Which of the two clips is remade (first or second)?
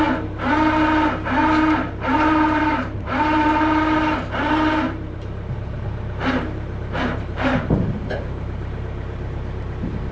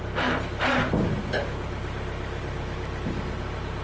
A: first